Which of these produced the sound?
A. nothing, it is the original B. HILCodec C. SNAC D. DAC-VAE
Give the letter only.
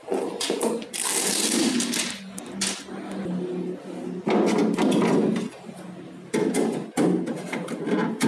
A